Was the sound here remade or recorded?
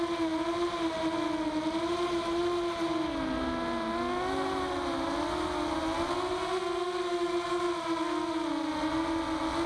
recorded